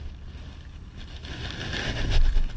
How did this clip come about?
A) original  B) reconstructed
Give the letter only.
A